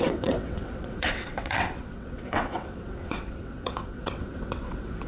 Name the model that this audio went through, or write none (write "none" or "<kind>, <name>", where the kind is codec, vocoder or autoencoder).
vocoder, WaveNeXt